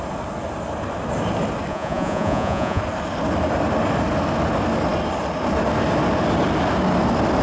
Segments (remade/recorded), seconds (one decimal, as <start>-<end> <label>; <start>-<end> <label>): 0.0-1.7 recorded; 1.7-2.8 remade; 2.8-7.4 recorded